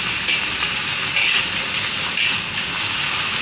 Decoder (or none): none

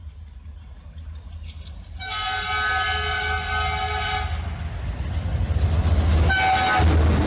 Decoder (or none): none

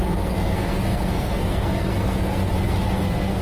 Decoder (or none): codec, SNAC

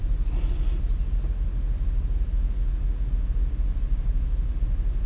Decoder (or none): none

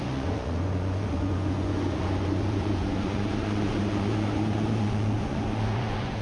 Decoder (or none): vocoder, Vocos